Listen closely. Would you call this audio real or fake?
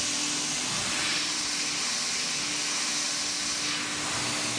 real